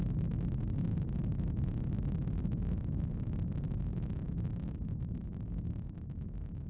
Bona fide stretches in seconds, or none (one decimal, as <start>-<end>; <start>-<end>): 0.0-2.4